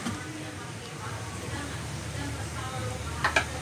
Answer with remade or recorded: remade